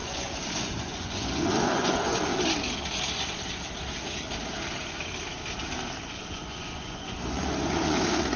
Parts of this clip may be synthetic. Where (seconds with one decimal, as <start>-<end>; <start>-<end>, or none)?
0.0-2.3; 6.0-8.4